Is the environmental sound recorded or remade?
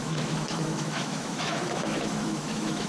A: remade